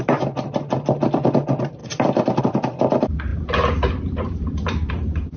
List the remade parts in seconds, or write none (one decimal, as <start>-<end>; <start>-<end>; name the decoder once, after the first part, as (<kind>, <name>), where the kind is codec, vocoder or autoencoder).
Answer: 3.3-4.9 (vocoder, BigVGAN v2)